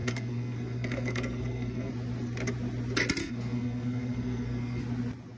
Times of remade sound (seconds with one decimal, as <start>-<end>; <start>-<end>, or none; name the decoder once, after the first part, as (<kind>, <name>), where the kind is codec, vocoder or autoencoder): 0.0-1.9 (codec, SNAC); 3.2-4.8